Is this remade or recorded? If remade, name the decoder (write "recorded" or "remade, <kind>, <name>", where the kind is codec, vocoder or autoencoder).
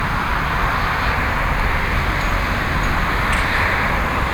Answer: recorded